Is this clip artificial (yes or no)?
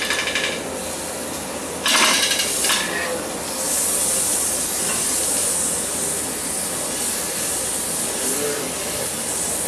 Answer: no